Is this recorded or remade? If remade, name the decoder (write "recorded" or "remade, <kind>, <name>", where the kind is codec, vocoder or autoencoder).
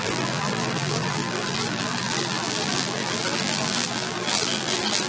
remade, vocoder, BigVGAN v2